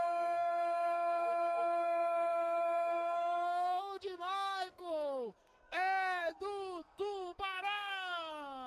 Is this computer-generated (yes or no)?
yes